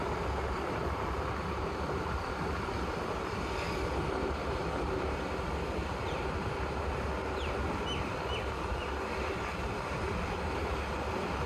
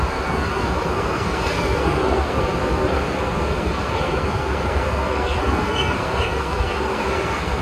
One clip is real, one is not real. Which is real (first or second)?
first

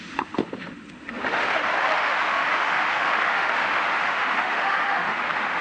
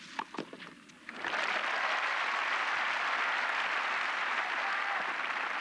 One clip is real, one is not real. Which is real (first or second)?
second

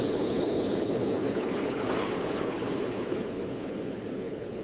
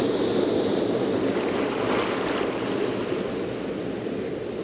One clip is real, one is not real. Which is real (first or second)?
second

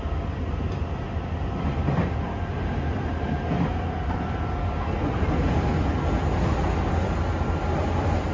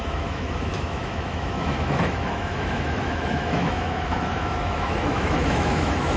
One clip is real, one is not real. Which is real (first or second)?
first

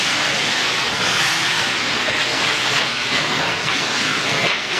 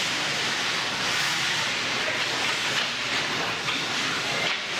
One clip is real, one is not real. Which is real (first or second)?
second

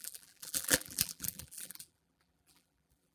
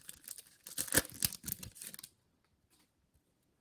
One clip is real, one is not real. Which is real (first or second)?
second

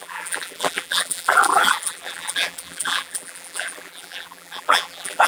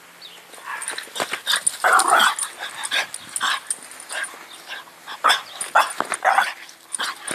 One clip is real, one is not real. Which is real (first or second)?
second